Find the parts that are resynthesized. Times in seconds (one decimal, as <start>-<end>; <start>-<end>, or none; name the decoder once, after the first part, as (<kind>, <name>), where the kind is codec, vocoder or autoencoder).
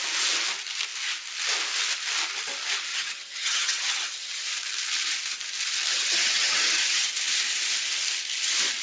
2.9-4.4 (vocoder, HiFi-GAN); 5.9-7.1